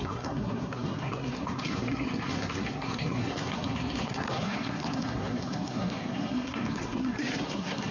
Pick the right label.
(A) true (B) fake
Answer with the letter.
B